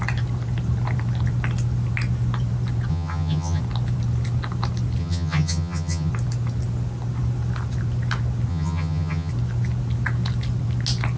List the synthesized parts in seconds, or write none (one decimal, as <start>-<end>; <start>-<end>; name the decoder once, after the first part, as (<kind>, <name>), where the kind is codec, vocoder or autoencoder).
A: 2.9-3.6 (vocoder, HiFi-GAN); 5.0-6.1; 8.5-9.3